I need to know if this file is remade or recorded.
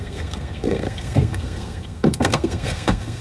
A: remade